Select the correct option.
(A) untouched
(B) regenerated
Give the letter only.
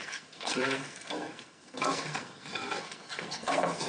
B